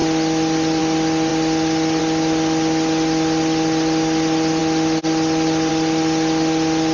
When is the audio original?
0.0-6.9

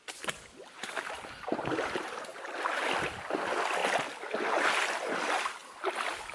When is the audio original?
0.0-6.3